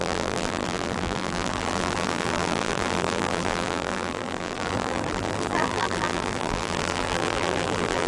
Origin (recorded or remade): remade